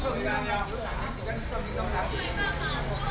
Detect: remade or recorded recorded